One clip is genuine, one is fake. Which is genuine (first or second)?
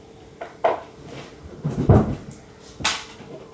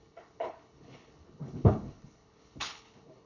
first